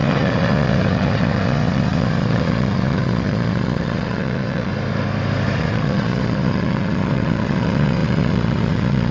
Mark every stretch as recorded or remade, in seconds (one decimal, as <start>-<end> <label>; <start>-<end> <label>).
0.0-4.7 remade; 4.7-5.6 recorded; 5.6-9.1 remade